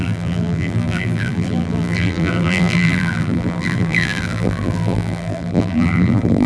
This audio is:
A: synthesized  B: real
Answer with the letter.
A